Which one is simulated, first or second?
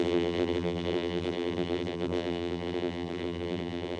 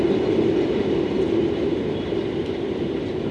first